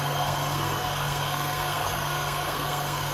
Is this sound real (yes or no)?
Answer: no